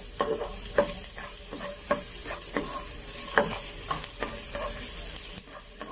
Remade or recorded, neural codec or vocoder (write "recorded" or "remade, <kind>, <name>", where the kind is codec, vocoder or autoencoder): recorded